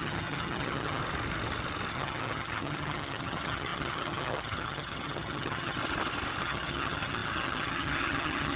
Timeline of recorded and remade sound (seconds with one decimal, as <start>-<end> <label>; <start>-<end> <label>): 0.0-1.0 remade; 1.0-1.9 recorded; 1.9-5.8 remade; 5.8-6.4 recorded; 6.4-8.6 remade